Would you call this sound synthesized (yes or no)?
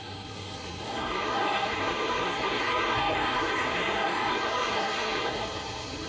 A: yes